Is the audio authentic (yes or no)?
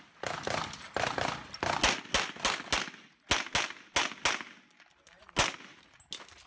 yes